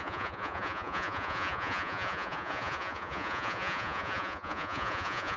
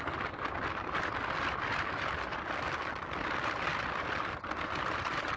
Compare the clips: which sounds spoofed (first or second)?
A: first